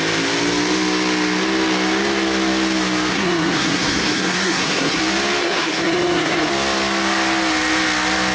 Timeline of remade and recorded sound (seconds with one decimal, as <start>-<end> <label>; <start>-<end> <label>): 0.0-3.1 recorded; 3.1-5.0 remade; 5.0-5.4 recorded; 5.4-6.5 remade; 6.5-8.3 recorded